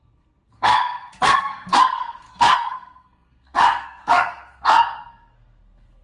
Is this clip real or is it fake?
fake